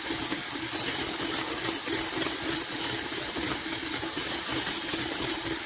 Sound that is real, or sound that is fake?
real